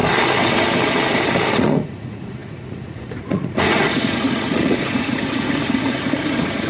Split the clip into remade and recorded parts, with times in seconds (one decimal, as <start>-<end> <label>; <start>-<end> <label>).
0.0-1.5 recorded; 1.5-6.7 remade